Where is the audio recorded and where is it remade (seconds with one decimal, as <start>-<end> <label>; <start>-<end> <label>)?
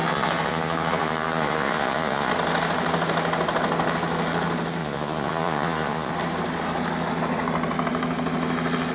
0.0-2.3 remade; 2.3-4.8 recorded; 4.8-6.1 remade; 6.1-8.9 recorded